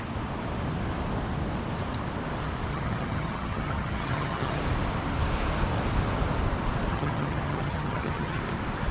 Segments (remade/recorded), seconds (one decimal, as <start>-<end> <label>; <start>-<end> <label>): 0.0-2.7 recorded; 2.7-4.6 remade; 4.6-6.9 recorded; 6.9-8.4 remade; 8.4-8.9 recorded

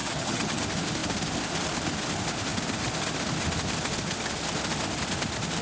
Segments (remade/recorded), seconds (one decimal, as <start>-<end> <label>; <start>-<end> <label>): 0.0-0.6 remade; 0.6-5.6 recorded